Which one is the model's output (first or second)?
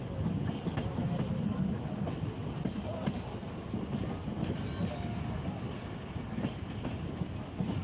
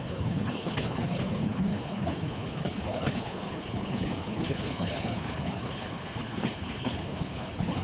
second